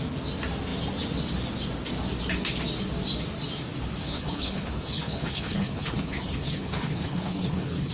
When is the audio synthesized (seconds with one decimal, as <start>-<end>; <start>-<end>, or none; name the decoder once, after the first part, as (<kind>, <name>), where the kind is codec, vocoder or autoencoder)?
4.0-7.9 (codec, HILCodec)